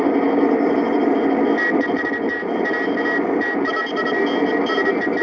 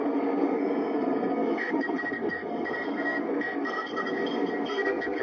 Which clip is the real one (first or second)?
first